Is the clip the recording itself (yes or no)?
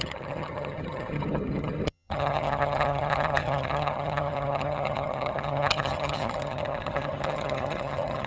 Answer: no